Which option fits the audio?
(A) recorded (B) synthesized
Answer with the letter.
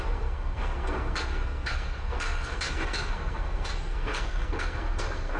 B